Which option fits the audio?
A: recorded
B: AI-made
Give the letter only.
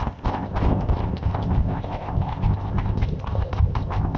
B